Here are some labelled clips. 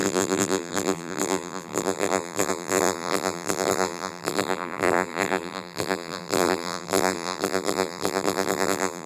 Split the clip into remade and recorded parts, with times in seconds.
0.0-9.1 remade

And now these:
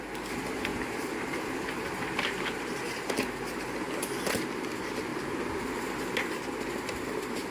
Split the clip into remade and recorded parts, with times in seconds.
0.0-0.7 recorded; 0.7-3.1 remade; 3.1-5.1 recorded; 5.1-5.8 remade; 5.8-7.5 recorded

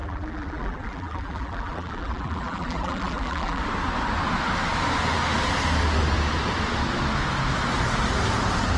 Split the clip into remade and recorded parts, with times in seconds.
0.0-3.6 remade; 3.6-8.8 recorded